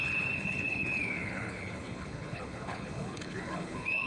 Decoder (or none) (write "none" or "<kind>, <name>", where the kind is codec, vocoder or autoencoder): codec, HILCodec